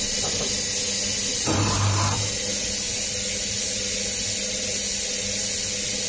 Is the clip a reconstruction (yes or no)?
no